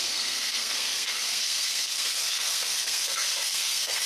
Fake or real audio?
fake